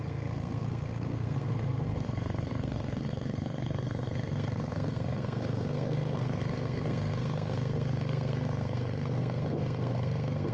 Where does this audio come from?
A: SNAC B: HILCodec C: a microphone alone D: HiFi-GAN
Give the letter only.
A